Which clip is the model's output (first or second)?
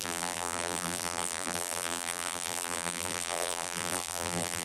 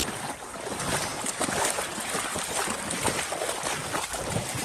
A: first